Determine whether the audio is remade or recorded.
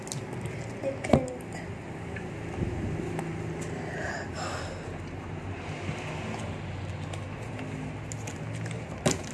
recorded